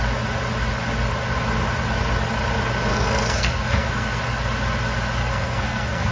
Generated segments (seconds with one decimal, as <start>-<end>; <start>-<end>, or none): 2.9-4.2; 5.2-6.1